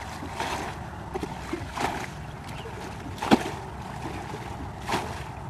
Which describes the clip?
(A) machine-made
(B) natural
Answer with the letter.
B